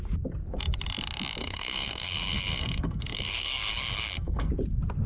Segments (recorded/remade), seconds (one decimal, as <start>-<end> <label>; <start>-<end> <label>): 0.0-1.4 recorded; 1.4-4.5 remade; 4.5-5.1 recorded